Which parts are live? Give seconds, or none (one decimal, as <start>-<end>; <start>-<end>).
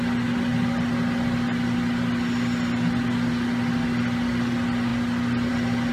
0.0-5.9